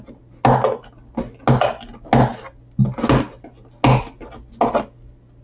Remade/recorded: recorded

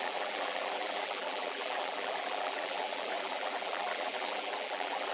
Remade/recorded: remade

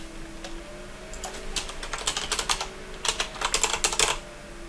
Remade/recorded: recorded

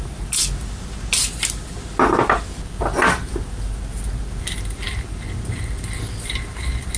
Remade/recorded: recorded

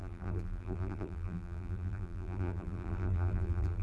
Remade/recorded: remade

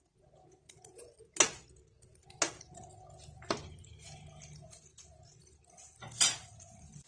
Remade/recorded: recorded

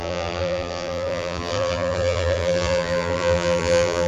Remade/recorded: remade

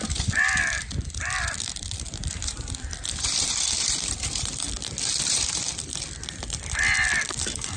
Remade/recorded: remade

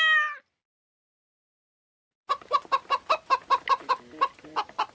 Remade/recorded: recorded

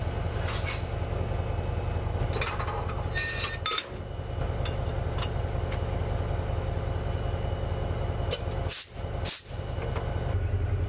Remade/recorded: recorded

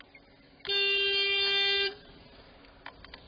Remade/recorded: recorded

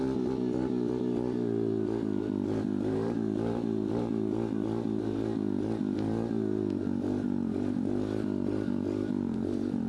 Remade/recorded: remade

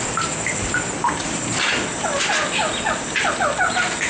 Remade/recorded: recorded